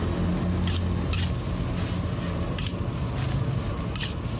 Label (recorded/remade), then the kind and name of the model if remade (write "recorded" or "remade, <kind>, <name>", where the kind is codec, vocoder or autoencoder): recorded